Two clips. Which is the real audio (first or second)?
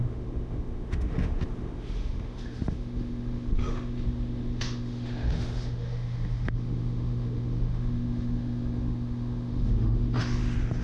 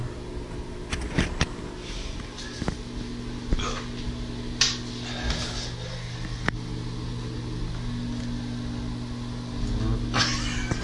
second